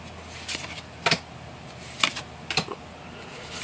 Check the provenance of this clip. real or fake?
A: real